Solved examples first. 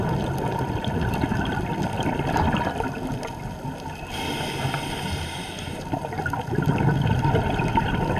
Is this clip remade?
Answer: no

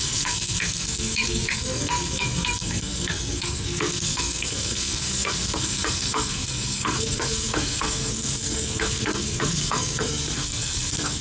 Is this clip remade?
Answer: yes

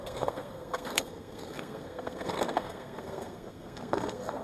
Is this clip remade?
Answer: yes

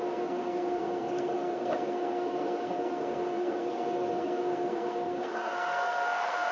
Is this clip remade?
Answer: yes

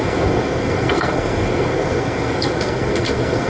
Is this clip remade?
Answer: yes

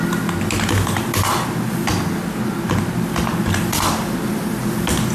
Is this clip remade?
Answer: no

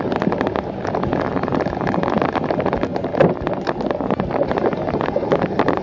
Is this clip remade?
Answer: no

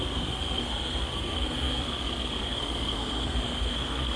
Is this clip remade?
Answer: yes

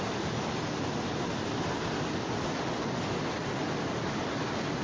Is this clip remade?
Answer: no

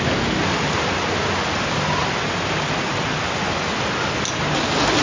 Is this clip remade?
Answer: no